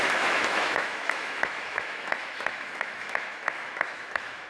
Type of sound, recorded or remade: remade